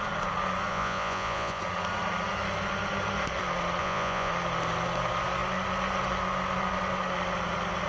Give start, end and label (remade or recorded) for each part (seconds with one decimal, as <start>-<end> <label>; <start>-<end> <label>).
0.0-0.7 recorded; 0.7-1.6 remade; 1.6-3.8 recorded; 3.8-4.3 remade; 4.3-7.9 recorded